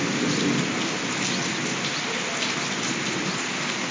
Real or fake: real